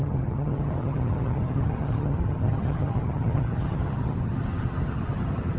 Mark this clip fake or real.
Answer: fake